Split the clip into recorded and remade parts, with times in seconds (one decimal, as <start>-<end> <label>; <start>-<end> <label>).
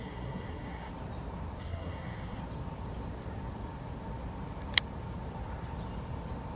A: 0.0-0.9 remade; 0.9-1.6 recorded; 1.6-2.4 remade; 2.4-6.6 recorded